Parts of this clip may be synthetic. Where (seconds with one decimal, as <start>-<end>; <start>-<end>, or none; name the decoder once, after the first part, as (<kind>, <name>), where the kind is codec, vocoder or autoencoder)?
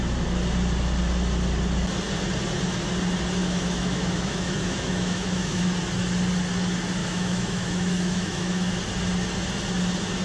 3.4-5.6 (autoencoder, DAC-VAE); 7.0-8.8